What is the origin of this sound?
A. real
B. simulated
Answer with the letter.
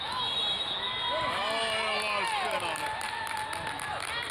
A